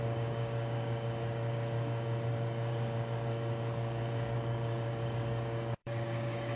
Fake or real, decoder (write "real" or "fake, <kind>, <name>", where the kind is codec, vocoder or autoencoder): fake, codec, DAC